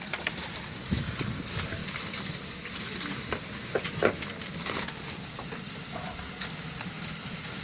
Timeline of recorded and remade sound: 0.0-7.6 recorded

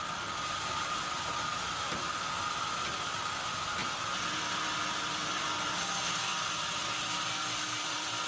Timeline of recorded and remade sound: 0.0-8.3 recorded

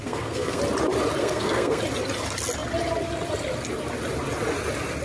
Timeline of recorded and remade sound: 0.0-0.6 remade; 0.6-1.2 recorded; 1.2-1.8 remade; 1.8-5.0 recorded

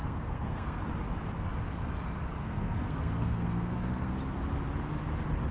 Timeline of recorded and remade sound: 0.0-0.8 remade; 0.8-2.4 recorded; 2.4-4.1 remade; 4.1-5.5 recorded

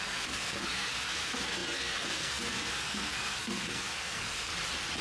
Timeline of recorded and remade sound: 0.0-4.5 remade; 4.5-5.0 recorded